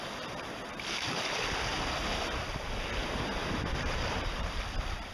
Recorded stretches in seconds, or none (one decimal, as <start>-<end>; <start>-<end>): 0.0-3.4; 4.6-5.1